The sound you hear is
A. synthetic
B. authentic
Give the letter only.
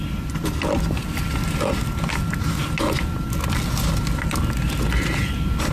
B